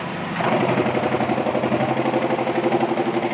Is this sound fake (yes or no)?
no